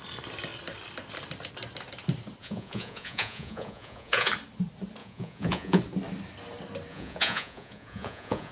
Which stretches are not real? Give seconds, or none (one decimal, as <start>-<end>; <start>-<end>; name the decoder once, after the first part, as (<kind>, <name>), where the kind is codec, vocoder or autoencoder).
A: 2.4-4.3 (vocoder, Vocos); 5.0-5.8; 6.9-8.5